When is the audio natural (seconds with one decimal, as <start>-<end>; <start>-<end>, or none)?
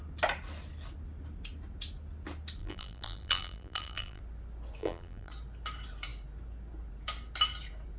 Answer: 0.0-2.6; 4.2-4.8; 5.3-8.0